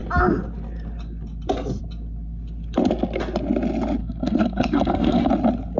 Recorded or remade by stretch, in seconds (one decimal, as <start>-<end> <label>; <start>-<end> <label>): 0.0-4.0 recorded; 4.0-5.3 remade; 5.3-5.8 recorded